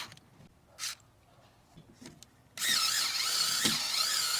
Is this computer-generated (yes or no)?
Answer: no